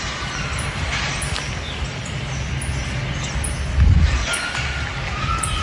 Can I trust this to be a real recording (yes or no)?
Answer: yes